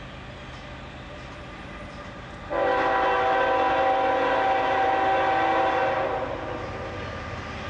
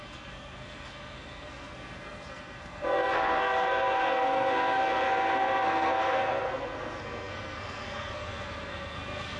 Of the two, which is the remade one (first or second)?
second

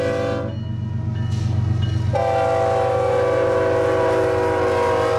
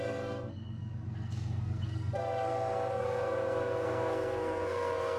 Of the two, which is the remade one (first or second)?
second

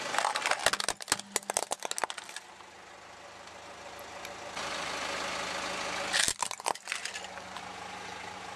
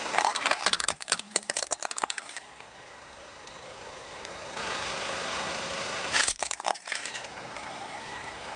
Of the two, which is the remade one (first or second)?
second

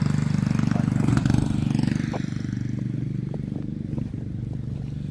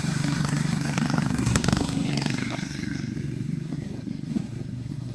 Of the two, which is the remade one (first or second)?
second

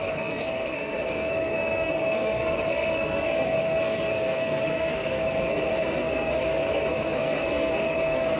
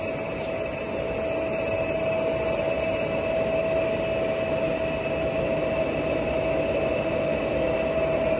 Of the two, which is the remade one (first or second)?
first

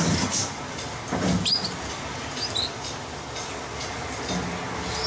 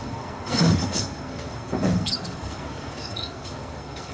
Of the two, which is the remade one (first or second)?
second